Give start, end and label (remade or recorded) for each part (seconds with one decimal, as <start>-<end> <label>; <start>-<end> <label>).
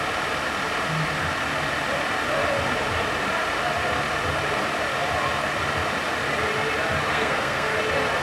0.0-7.1 recorded; 7.1-7.7 remade; 7.7-8.2 recorded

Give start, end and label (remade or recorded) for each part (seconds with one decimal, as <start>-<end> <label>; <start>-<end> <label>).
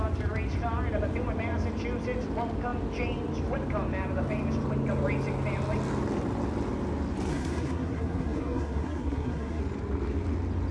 0.0-7.3 recorded; 7.3-9.6 remade; 9.6-10.7 recorded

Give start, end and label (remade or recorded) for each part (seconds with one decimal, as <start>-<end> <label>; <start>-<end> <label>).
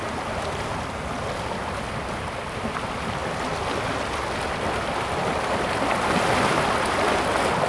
0.0-7.7 recorded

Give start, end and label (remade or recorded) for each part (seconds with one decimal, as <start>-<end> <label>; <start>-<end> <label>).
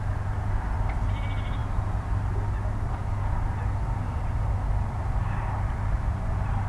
0.0-6.7 recorded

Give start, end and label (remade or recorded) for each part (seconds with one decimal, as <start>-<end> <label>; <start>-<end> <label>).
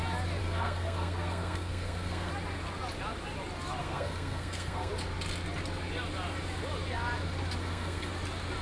0.0-0.4 recorded; 0.4-2.3 remade; 2.3-3.8 recorded; 3.8-4.9 remade; 4.9-7.6 recorded; 7.6-8.1 remade; 8.1-8.6 recorded